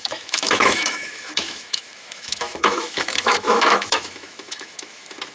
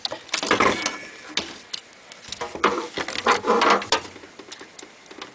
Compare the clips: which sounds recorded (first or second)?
second